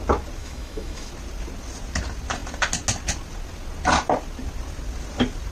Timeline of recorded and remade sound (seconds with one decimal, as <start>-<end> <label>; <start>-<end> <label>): 0.0-0.4 recorded; 0.4-1.1 remade; 1.1-5.5 recorded